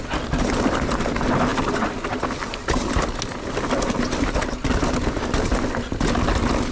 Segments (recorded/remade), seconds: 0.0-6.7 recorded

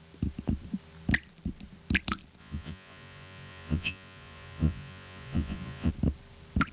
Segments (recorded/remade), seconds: 0.0-2.4 recorded; 2.4-5.9 remade; 5.9-6.7 recorded

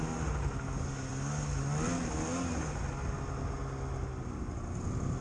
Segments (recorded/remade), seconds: 0.0-5.2 recorded